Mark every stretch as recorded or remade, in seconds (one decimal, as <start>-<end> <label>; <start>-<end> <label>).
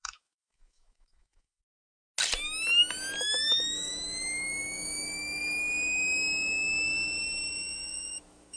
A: 0.0-1.7 remade; 1.7-3.2 recorded; 3.2-8.6 remade